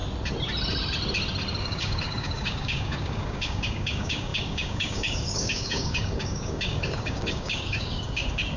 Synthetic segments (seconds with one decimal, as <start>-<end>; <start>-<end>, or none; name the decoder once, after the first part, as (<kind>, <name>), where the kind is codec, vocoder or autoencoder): 1.6-8.6 (codec, DAC)